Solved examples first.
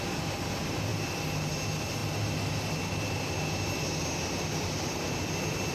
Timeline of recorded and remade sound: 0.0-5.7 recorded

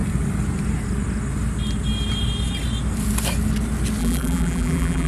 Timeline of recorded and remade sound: 0.0-4.0 recorded; 4.0-5.1 remade